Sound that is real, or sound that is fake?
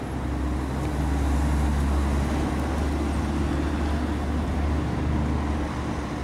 real